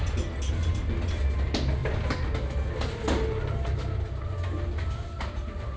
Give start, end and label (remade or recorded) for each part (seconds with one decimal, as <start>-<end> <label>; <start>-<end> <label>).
0.0-5.8 recorded